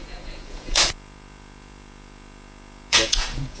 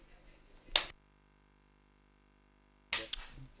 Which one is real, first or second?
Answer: second